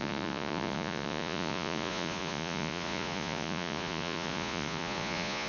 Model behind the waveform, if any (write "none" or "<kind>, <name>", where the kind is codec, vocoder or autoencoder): vocoder, Vocos